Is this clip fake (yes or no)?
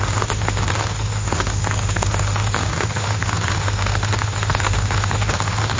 yes